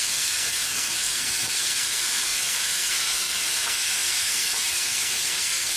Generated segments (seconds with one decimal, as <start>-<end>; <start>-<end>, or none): 0.0-5.8